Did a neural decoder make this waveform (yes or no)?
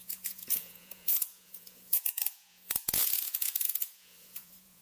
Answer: yes